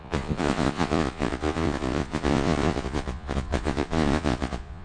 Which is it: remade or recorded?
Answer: remade